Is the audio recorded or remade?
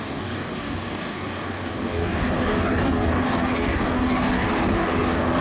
remade